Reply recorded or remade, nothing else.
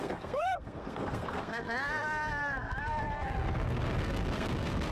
remade